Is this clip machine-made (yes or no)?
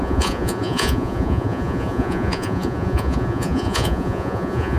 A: yes